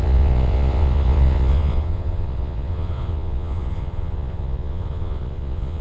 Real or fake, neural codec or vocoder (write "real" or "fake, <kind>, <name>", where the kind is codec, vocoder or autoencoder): fake, vocoder, Vocos